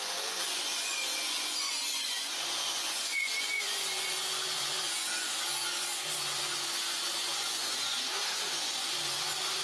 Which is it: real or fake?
fake